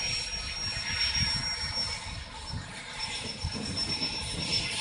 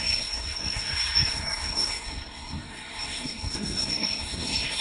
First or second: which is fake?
second